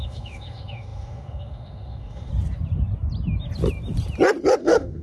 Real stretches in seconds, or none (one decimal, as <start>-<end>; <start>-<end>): 2.3-4.6